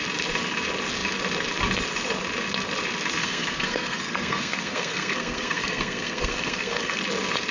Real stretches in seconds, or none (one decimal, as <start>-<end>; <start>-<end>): 0.0-3.2; 7.0-7.5